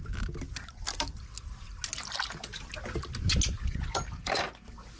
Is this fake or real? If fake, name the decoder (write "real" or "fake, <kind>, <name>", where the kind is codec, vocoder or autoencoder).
real